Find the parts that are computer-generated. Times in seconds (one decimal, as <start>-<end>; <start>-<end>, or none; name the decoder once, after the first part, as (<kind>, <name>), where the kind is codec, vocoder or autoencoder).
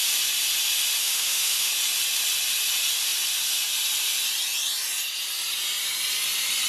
1.0-1.7 (autoencoder, DAC-VAE)